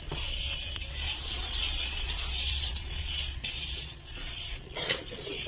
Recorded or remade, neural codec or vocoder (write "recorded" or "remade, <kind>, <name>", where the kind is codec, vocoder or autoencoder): remade, vocoder, Vocos